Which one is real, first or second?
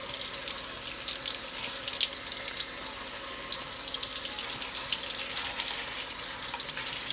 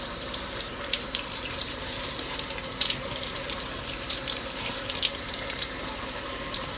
first